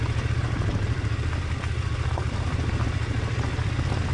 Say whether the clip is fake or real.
fake